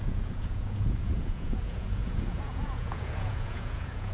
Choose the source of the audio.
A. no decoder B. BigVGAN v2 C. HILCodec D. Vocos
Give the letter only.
D